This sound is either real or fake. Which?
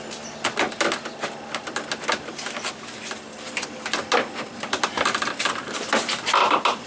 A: real